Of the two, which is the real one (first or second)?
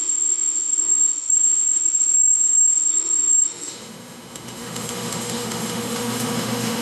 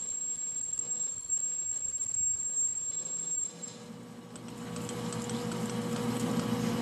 second